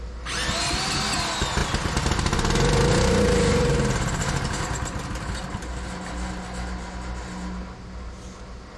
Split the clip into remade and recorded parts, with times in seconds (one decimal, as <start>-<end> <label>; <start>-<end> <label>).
0.0-8.8 recorded